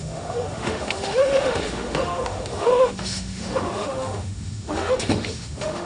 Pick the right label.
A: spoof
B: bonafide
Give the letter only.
A